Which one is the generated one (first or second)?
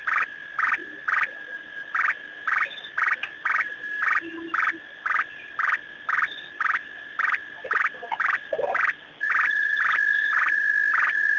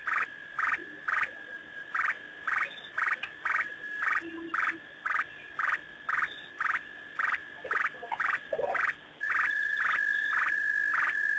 first